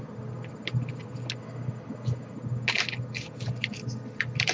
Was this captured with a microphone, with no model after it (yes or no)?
yes